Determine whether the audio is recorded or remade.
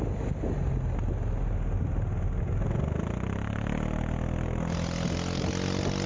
recorded